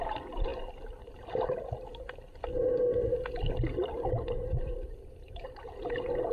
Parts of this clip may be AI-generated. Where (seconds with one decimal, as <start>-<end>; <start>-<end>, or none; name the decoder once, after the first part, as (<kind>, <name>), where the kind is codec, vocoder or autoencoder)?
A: 0.0-0.5 (vocoder, BigVGAN v2); 4.1-6.3